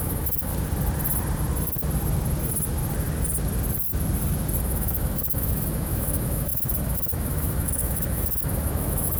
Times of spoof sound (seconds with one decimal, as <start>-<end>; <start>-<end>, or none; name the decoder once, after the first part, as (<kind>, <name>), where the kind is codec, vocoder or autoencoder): 0.0-0.5 (autoencoder, DAC-VAE); 4.6-9.2